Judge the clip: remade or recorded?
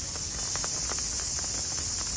recorded